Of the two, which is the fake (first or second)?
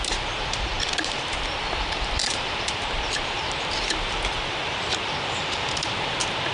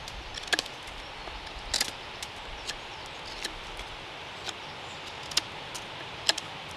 first